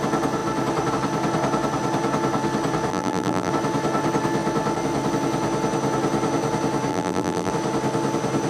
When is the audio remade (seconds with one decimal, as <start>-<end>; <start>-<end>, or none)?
2.9-3.5; 6.9-7.5